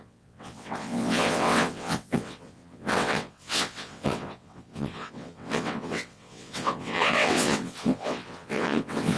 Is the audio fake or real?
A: fake